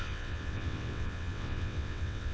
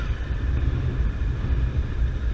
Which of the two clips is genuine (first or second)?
second